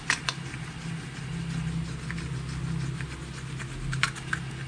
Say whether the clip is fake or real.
real